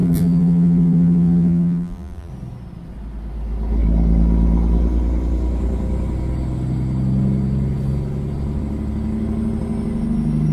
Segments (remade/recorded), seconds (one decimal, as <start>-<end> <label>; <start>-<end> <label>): 0.0-2.3 remade; 2.3-10.5 recorded